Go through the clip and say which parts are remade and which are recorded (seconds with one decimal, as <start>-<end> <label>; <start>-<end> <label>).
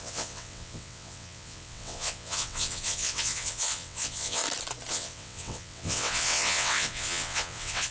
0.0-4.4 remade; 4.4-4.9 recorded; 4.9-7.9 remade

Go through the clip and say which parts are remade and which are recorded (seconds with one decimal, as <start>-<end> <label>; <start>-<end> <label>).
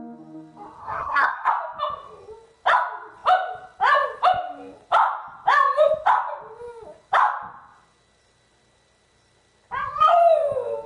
0.0-0.8 recorded; 0.8-1.5 remade; 1.5-10.9 recorded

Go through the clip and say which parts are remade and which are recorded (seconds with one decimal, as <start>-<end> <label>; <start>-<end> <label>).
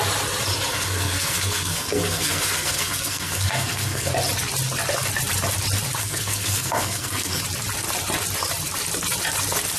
0.0-0.7 recorded; 0.7-4.1 remade; 4.1-6.0 recorded; 6.0-7.4 remade; 7.4-9.8 recorded